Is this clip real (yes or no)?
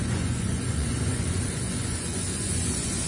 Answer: no